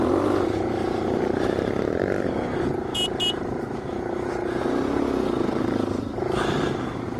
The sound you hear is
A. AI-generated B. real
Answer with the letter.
B